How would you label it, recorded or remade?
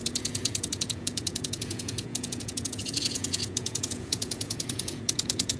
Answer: remade